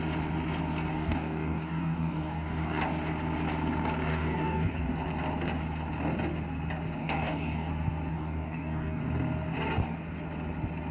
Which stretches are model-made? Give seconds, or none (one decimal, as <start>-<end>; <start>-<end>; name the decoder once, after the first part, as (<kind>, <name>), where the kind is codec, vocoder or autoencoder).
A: 0.9-2.8 (codec, DAC); 4.1-4.8; 7.0-7.7; 8.1-9.0

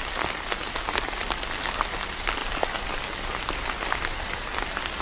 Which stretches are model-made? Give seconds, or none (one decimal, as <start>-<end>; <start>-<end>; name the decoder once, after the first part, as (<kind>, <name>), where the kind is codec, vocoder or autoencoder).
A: none

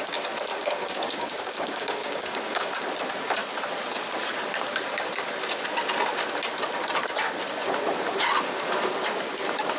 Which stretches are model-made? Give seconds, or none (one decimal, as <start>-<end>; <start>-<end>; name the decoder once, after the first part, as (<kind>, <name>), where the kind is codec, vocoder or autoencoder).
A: 0.5-2.7 (codec, DAC)